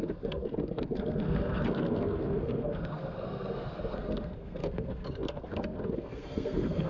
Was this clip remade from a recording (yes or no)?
yes